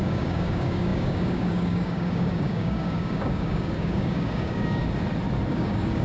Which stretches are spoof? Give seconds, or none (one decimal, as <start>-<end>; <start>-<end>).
0.0-4.8; 5.5-6.0